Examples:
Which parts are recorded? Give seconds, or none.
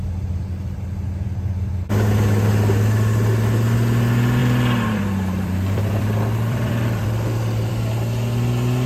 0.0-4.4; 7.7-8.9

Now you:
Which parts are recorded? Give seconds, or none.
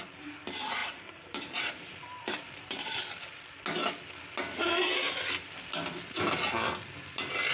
0.0-0.8; 3.0-7.5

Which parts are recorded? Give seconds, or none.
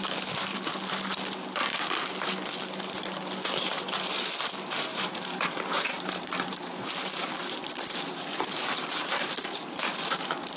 0.0-4.9; 10.1-10.6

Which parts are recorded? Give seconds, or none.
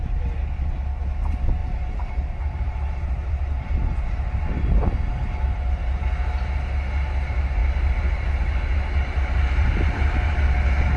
0.0-1.6; 6.0-7.6; 10.4-11.0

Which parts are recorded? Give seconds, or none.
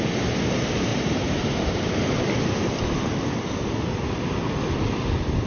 0.0-0.9; 1.8-5.5